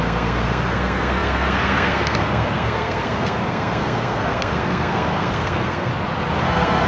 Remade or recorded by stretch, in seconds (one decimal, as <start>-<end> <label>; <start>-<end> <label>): 0.0-5.9 remade; 5.9-6.4 recorded; 6.4-6.9 remade

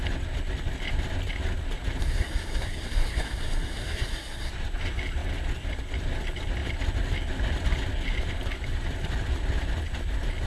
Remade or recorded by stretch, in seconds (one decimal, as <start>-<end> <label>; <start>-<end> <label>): 0.0-2.0 recorded; 2.0-4.5 remade; 4.5-10.5 recorded

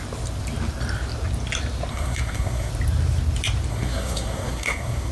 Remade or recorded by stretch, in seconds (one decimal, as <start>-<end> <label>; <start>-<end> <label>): 0.0-1.9 recorded; 1.9-2.7 remade; 2.7-3.7 recorded; 3.7-5.1 remade

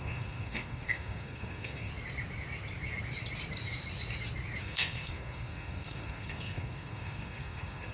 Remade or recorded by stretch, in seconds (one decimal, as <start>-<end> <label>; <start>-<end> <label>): 0.0-1.9 remade; 1.9-4.6 recorded; 4.6-7.9 remade